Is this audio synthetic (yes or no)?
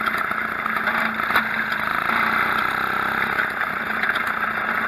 no